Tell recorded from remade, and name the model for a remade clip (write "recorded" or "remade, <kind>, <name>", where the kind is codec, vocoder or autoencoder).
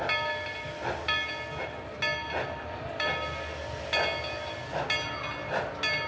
recorded